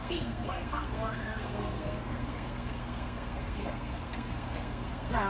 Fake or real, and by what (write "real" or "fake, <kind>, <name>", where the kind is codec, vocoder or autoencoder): fake, codec, SNAC